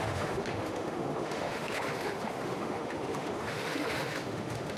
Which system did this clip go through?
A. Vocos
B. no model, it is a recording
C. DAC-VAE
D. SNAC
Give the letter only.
C